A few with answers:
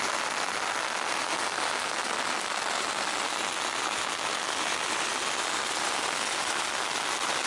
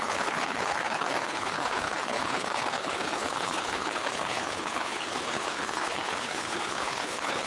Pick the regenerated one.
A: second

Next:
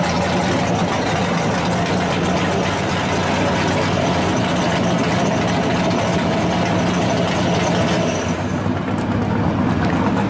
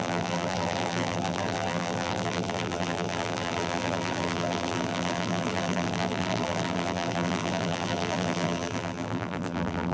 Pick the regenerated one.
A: second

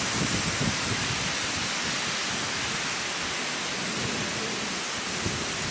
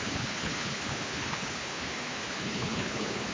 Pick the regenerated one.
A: second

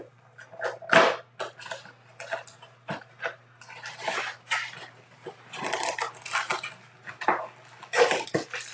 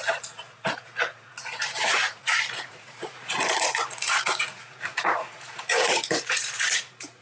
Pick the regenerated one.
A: second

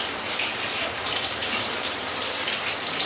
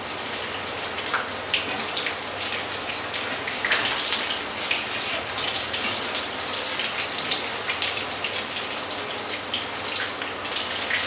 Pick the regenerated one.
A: first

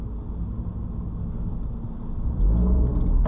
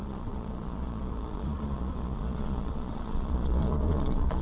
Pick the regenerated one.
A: second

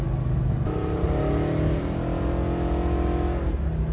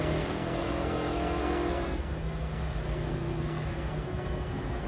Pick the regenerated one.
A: second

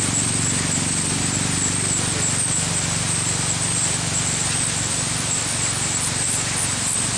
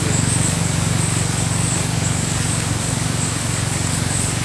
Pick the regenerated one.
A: second